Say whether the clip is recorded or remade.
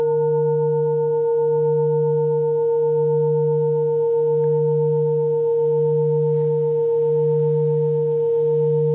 recorded